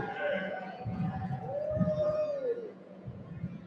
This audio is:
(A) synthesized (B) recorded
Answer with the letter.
A